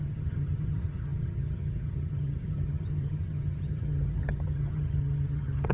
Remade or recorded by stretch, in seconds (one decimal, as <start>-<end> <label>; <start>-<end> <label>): 0.0-5.7 remade